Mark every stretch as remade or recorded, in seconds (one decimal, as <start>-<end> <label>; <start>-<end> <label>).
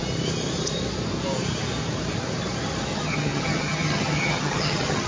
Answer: 0.0-2.9 recorded; 2.9-5.1 remade